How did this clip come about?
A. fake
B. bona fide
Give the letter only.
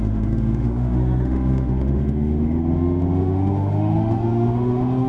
A